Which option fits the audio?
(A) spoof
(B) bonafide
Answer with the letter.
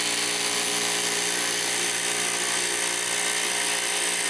B